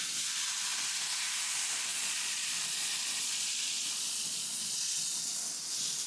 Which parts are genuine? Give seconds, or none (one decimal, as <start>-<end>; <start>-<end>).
0.0-1.9; 5.2-6.1